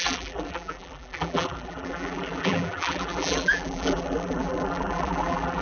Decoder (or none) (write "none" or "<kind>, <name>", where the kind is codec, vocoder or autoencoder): vocoder, BigVGAN v2